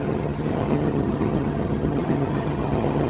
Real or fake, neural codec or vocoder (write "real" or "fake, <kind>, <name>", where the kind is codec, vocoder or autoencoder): fake, vocoder, HiFi-GAN